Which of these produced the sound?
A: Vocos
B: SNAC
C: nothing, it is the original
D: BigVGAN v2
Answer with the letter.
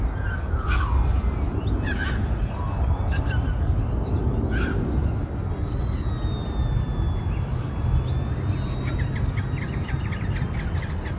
C